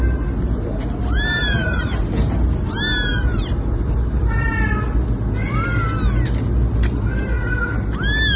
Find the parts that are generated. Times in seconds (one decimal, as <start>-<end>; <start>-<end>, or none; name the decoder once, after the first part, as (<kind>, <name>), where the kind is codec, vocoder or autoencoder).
1.4-2.0 (vocoder, BigVGAN v2); 3.1-4.2